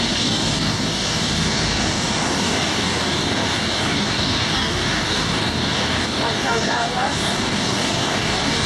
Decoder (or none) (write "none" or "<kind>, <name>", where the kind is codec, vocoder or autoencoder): codec, DAC